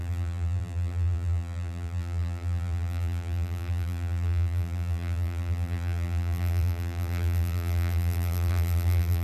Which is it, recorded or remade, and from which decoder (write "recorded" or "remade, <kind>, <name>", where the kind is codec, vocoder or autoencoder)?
remade, vocoder, BigVGAN v2